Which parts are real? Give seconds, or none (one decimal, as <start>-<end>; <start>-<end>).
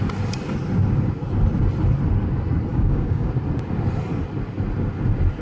0.0-2.7; 3.3-5.4